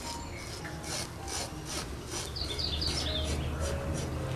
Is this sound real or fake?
real